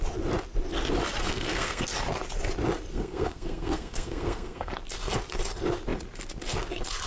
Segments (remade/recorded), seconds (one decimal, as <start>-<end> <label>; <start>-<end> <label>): 0.0-1.2 recorded; 1.2-1.8 remade; 1.8-2.9 recorded; 2.9-4.7 remade; 4.7-7.1 recorded